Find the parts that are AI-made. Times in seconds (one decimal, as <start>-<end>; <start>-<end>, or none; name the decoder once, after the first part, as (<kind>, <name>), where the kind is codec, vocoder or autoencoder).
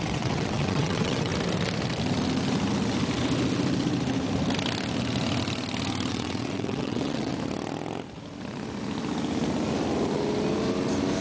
0.0-1.3 (vocoder, WaveNeXt); 6.1-7.3